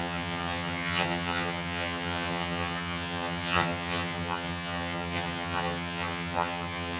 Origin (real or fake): fake